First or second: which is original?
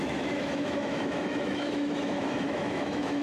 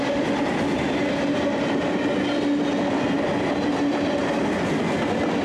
second